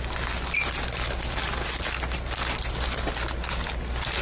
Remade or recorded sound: recorded